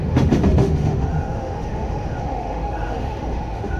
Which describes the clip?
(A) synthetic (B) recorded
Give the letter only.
A